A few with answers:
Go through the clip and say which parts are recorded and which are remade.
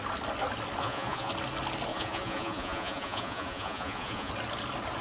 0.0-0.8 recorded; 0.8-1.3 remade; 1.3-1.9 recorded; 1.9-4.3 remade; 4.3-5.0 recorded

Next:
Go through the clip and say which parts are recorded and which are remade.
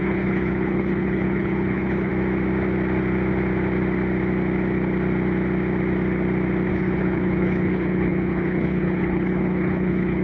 0.0-2.1 remade; 2.1-6.7 recorded; 6.7-10.2 remade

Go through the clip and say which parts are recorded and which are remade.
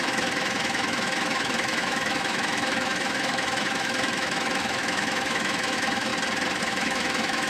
0.0-6.1 remade; 6.1-6.6 recorded; 6.6-7.5 remade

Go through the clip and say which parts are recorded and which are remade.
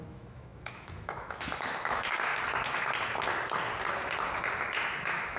0.0-2.3 remade; 2.3-4.7 recorded; 4.7-5.4 remade